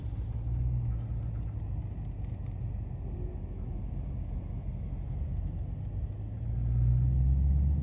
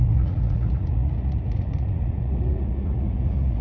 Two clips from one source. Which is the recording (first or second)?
first